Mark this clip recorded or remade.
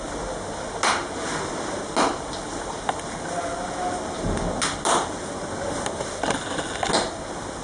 recorded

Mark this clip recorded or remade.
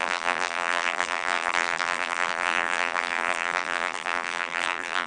remade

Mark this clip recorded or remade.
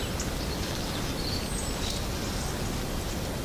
recorded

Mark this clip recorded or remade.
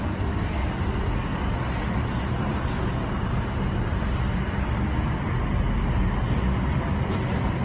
recorded